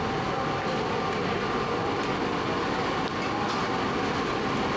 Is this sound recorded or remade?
recorded